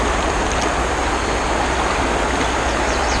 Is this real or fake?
real